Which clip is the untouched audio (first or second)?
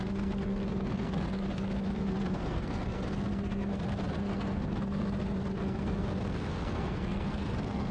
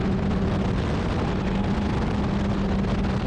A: second